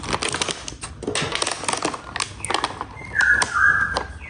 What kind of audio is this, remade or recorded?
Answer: recorded